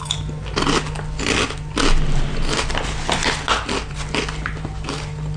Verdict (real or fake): real